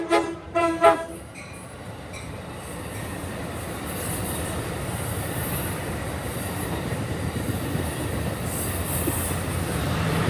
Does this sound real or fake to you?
fake